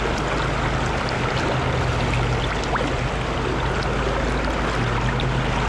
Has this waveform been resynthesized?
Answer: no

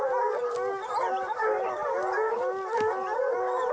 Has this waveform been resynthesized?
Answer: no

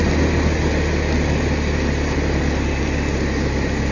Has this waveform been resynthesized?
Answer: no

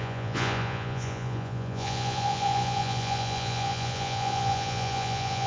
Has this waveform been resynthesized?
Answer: yes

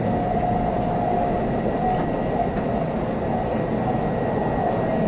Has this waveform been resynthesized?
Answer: no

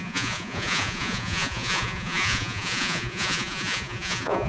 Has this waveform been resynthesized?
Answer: yes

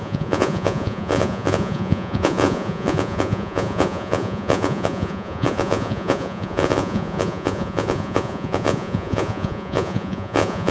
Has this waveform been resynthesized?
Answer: yes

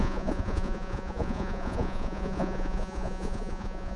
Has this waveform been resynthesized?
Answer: yes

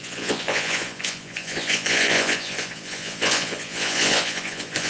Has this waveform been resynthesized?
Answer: yes